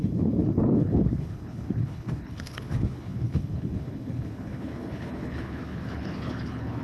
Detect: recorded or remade remade